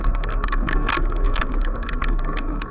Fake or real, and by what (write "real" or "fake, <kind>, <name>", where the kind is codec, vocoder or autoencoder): fake, codec, SNAC